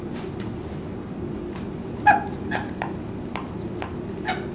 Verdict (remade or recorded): recorded